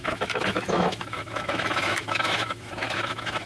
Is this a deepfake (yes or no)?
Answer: yes